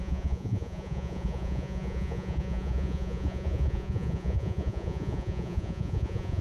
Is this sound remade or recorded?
remade